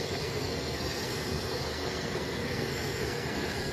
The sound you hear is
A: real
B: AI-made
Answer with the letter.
B